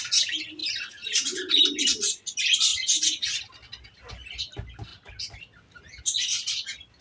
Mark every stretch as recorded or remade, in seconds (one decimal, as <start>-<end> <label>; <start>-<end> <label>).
0.0-7.0 recorded